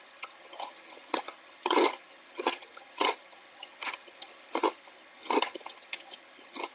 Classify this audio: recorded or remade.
remade